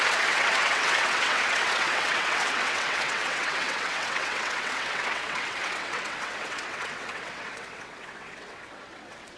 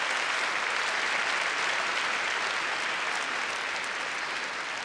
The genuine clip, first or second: second